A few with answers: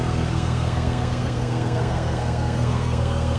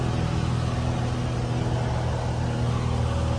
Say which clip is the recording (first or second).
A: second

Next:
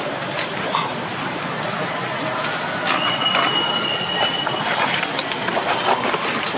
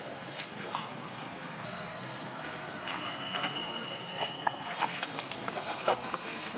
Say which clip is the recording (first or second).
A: first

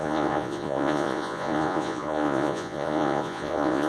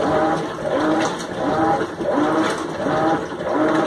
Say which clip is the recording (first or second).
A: second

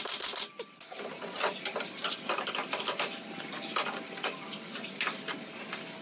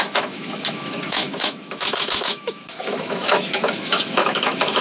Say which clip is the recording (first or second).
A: first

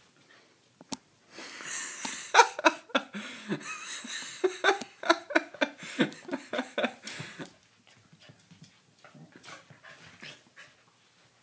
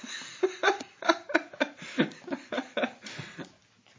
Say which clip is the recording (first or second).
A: first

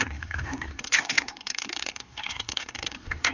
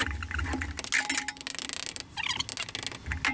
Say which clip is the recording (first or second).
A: second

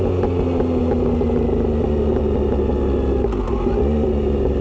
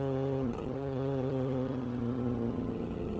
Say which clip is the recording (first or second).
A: first